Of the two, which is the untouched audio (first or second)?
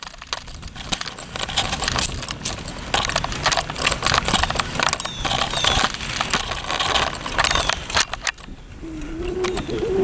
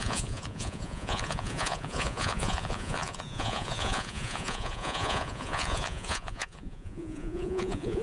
first